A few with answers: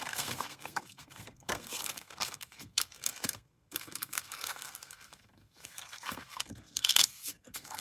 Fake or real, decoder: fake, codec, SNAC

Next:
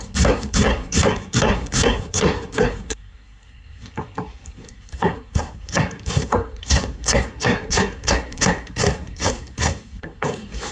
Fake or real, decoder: fake, codec, SNAC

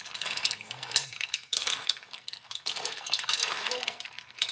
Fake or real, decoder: fake, codec, SNAC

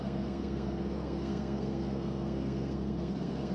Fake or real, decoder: fake, codec, SNAC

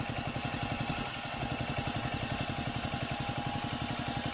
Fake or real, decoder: real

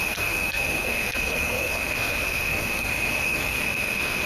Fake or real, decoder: fake, codec, SNAC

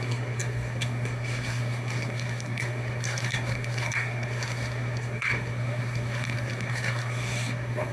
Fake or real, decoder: fake, codec, SNAC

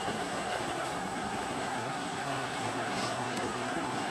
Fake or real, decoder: fake, codec, SNAC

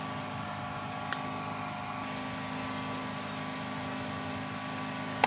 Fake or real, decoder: real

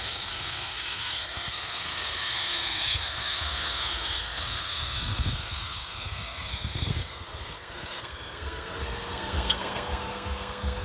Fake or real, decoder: fake, codec, SNAC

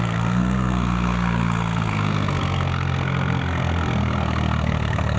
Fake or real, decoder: fake, codec, SNAC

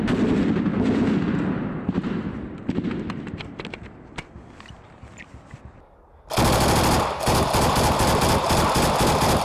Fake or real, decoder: real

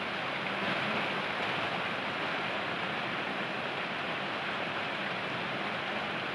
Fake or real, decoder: real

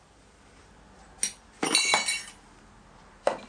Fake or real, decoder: real